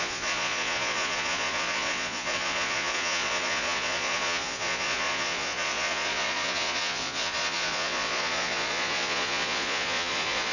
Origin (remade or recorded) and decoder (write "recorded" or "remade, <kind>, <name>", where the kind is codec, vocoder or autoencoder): remade, vocoder, Vocos